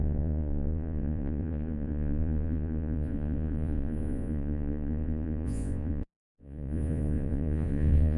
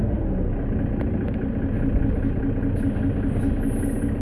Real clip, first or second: second